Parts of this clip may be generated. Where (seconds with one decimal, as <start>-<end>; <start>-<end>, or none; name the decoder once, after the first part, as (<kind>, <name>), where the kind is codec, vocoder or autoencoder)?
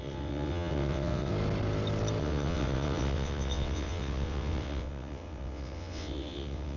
0.0-1.3 (vocoder, WaveNeXt); 2.2-6.8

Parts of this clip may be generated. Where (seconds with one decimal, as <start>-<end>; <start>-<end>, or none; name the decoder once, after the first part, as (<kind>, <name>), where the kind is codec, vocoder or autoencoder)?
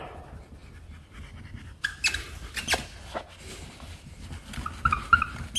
none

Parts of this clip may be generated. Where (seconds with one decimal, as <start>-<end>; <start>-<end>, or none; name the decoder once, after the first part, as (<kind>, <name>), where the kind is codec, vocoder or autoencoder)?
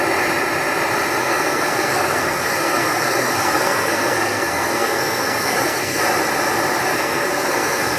1.2-6.0 (codec, SNAC); 6.9-8.0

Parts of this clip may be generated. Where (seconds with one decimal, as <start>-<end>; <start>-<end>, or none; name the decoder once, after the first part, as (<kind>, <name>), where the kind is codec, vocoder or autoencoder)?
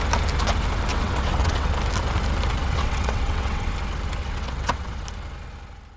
0.9-1.7 (vocoder, WaveNeXt); 2.6-3.7; 4.2-5.0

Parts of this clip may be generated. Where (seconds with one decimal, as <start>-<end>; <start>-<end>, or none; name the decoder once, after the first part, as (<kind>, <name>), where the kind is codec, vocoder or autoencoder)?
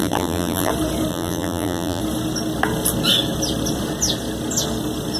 0.0-0.7 (vocoder, BigVGAN v2); 1.1-2.0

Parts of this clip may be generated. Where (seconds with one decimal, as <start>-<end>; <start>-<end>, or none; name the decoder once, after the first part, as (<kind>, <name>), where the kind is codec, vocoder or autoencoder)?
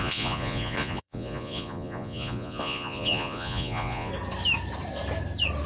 0.0-4.1 (vocoder, Vocos)